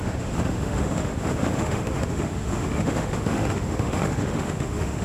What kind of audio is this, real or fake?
fake